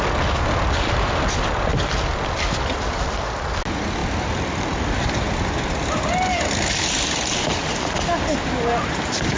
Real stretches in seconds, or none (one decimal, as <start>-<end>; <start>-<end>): 0.0-9.4